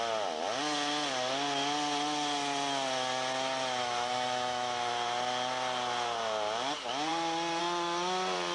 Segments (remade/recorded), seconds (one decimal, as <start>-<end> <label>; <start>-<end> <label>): 0.0-3.8 recorded; 3.8-4.9 remade; 4.9-8.5 recorded

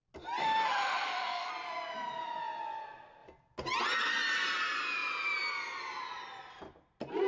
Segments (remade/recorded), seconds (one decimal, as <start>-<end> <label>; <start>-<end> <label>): 0.0-0.4 recorded; 0.4-1.5 remade; 1.5-7.3 recorded

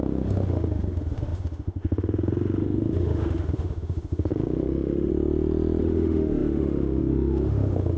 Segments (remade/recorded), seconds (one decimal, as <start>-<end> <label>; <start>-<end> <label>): 0.0-5.1 remade; 5.1-5.8 recorded; 5.8-8.0 remade